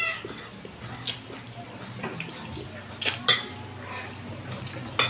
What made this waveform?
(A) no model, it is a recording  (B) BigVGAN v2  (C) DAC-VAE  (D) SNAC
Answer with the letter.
A